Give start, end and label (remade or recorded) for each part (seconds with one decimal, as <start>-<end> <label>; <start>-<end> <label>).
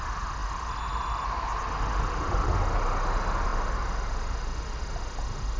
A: 0.0-5.6 recorded